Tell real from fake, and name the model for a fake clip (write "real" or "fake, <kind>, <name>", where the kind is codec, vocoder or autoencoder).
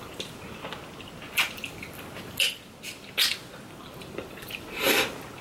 real